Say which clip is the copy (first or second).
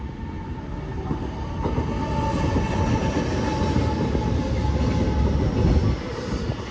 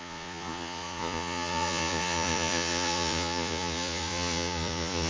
second